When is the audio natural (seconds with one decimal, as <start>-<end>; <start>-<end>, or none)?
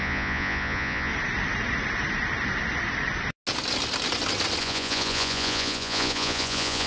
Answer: 1.1-4.6